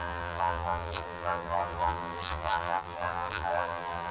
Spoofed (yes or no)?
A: yes